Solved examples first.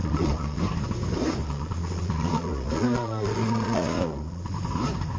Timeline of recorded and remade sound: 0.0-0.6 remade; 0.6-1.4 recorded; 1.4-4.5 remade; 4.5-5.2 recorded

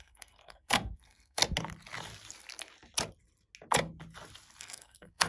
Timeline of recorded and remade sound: 0.0-1.4 remade; 1.4-4.6 recorded; 4.6-5.3 remade

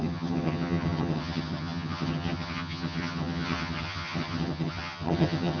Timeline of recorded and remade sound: 0.0-5.6 remade

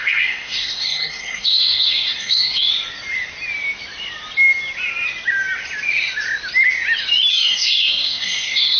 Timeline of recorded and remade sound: 0.0-2.7 remade; 2.7-7.3 recorded; 7.3-8.8 remade

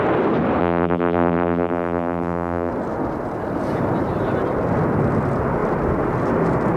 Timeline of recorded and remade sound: 0.0-0.6 recorded; 0.6-2.7 remade; 2.7-6.8 recorded